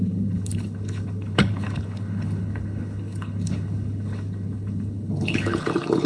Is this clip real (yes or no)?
no